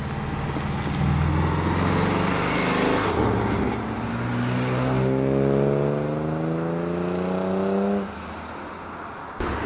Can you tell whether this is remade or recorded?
recorded